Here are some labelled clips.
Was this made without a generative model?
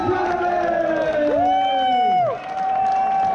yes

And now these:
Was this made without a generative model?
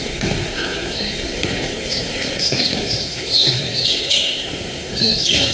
no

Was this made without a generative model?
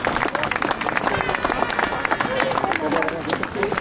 yes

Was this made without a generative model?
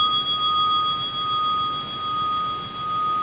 yes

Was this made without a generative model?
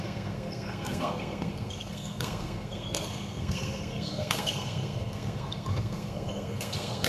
no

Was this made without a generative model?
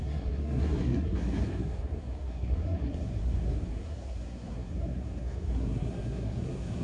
no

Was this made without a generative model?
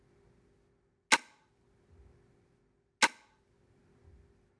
yes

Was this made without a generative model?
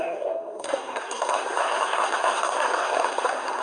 no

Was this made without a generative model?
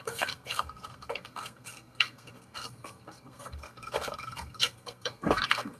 no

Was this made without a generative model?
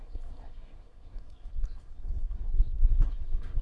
no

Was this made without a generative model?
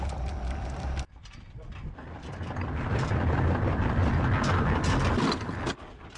yes